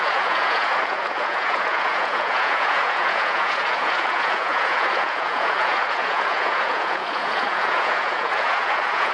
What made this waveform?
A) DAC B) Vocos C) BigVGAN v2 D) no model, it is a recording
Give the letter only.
B